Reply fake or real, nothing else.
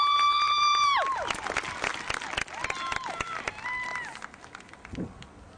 real